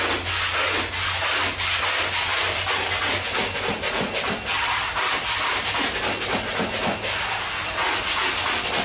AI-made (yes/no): no